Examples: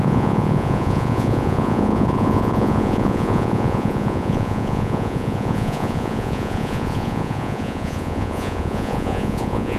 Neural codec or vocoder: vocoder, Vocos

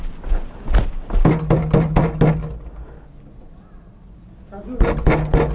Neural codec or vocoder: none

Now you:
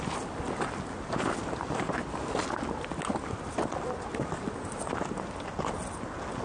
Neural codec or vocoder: none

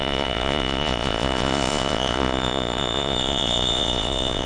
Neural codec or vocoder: vocoder, Vocos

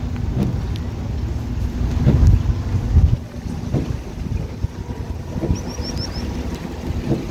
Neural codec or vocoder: none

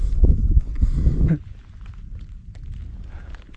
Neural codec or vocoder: none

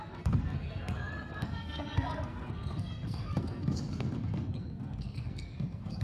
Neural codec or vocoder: codec, SNAC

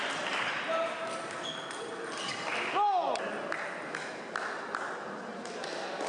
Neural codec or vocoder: none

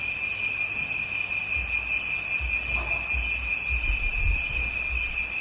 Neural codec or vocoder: none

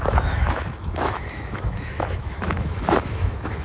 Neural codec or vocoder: autoencoder, DAC-VAE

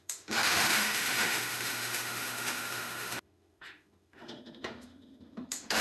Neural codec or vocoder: autoencoder, DAC-VAE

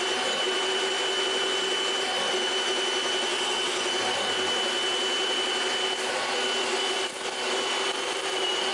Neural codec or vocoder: none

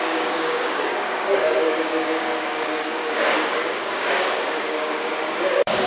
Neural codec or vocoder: codec, DAC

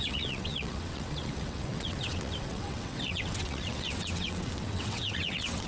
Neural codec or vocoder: vocoder, WaveNeXt